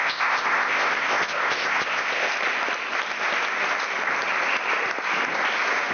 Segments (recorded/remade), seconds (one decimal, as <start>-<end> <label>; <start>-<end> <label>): 0.0-2.3 remade; 2.3-5.9 recorded